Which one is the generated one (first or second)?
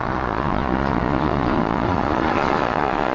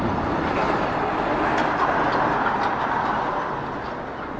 first